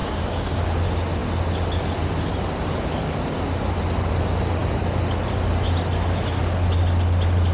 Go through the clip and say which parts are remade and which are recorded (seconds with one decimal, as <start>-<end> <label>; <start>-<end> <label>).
0.0-0.6 remade; 0.6-7.5 recorded